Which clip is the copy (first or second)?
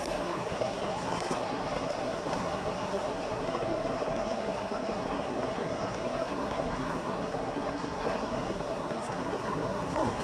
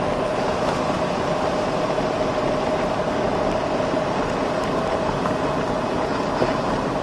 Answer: first